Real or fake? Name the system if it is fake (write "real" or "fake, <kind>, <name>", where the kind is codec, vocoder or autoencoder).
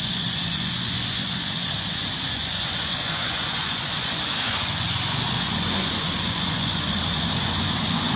fake, vocoder, Vocos